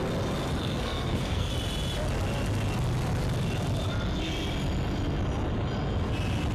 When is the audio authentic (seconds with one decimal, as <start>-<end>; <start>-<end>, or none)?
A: 0.0-0.6; 1.5-6.5